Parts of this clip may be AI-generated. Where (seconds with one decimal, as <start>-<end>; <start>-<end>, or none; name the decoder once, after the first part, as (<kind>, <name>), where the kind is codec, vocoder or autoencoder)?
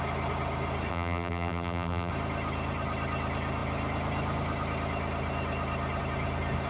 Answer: 0.9-2.1 (vocoder, BigVGAN v2)